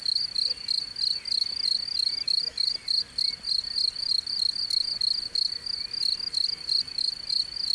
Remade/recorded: recorded